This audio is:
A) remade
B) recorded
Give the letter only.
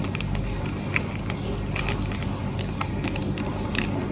B